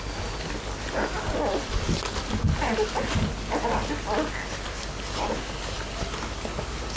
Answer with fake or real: real